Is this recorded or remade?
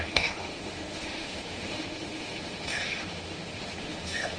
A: remade